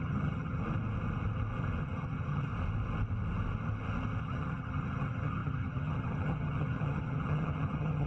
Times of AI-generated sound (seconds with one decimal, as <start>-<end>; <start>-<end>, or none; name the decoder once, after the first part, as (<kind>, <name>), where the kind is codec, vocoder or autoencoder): 0.0-0.6 (vocoder, HiFi-GAN); 1.8-2.5; 4.2-8.1